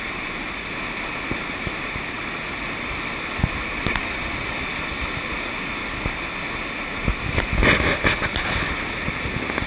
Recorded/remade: recorded